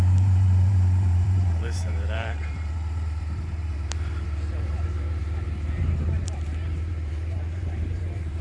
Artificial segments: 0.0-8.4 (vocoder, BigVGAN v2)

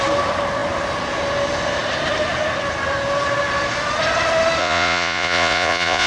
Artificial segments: 4.6-6.1 (vocoder, Vocos)